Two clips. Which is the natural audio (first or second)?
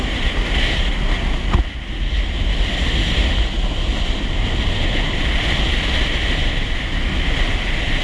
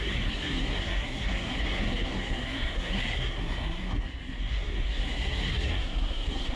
first